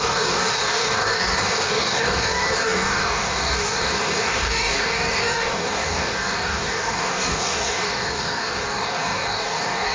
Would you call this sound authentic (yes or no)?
no